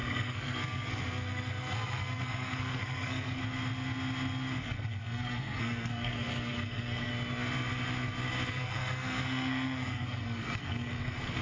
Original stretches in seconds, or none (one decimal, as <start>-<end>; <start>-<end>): 3.4-4.6; 7.1-8.5